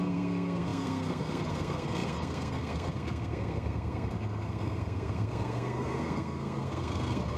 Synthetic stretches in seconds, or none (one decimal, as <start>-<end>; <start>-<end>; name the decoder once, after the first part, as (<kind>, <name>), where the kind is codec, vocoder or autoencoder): 0.0-7.4 (codec, SNAC)